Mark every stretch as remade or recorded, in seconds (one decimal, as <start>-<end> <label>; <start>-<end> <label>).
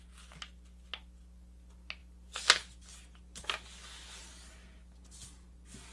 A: 0.0-5.9 recorded